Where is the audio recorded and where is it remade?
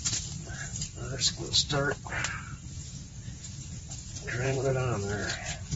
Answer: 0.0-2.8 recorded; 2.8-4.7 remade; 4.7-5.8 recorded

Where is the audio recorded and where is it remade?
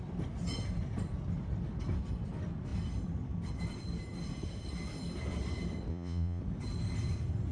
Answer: 0.0-5.9 recorded; 5.9-6.4 remade; 6.4-7.5 recorded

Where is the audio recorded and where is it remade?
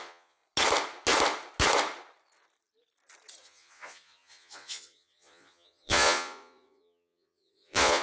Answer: 0.0-0.4 remade; 0.4-3.4 recorded; 3.4-8.0 remade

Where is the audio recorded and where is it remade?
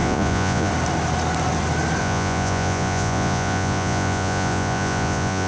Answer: 0.0-0.7 remade; 0.7-2.0 recorded; 2.0-5.5 remade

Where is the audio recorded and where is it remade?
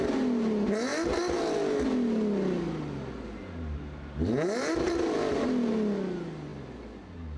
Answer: 0.0-7.4 recorded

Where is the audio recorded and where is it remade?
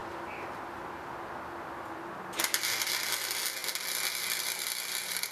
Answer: 0.0-5.3 recorded